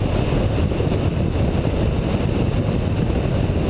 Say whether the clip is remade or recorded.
recorded